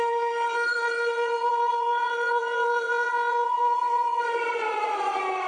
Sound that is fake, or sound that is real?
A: fake